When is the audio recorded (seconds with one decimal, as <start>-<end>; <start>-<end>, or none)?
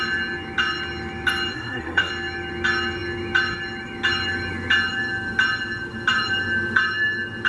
0.0-1.5; 2.1-7.5